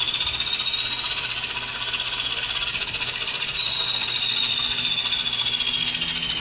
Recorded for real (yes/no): yes